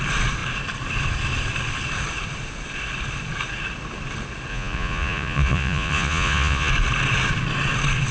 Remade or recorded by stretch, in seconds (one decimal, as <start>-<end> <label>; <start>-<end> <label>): 0.0-4.5 recorded; 4.5-6.7 remade; 6.7-8.1 recorded